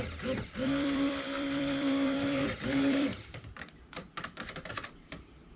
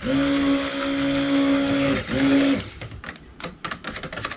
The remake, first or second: first